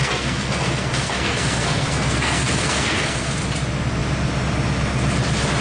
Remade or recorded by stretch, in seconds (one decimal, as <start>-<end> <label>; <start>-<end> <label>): 0.0-3.4 remade; 3.4-5.6 recorded